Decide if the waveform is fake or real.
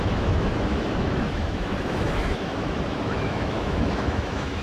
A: fake